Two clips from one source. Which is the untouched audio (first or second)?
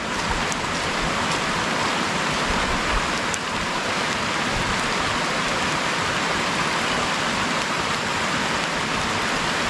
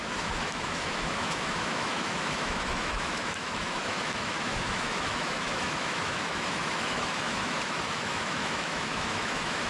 first